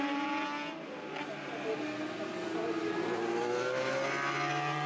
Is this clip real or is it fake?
real